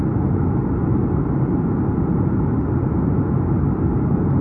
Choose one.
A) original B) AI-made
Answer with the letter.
A